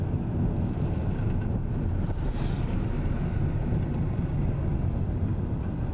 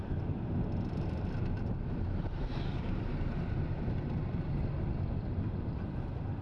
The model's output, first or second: second